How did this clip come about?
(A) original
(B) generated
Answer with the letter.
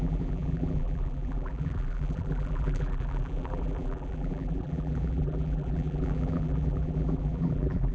B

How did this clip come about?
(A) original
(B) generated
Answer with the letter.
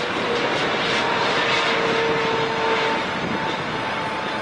A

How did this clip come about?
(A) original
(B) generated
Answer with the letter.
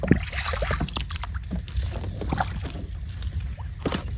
A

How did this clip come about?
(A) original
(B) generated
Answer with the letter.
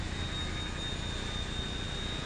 A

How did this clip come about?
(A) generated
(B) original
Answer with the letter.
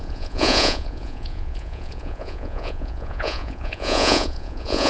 A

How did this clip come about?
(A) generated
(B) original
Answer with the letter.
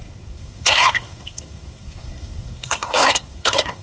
A